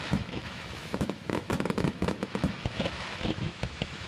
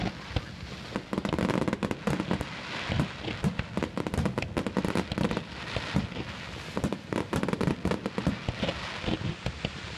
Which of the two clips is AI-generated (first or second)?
first